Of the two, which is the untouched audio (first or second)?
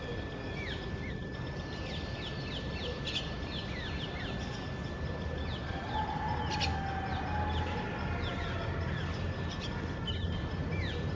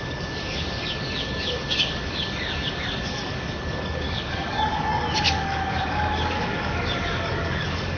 first